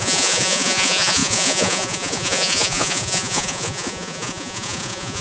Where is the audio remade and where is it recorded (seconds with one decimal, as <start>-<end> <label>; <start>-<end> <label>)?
0.0-5.2 remade